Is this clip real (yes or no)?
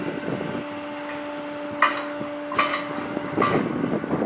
yes